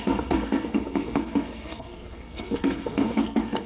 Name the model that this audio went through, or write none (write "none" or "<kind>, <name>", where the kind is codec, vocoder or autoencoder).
codec, SNAC